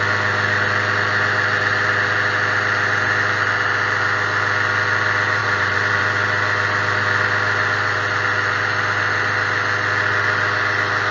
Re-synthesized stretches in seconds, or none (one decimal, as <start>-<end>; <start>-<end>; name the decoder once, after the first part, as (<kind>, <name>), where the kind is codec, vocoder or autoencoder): 5.4-6.0 (vocoder, BigVGAN v2)